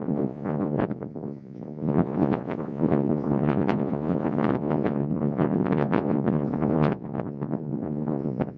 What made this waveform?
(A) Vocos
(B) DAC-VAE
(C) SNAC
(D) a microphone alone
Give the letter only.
A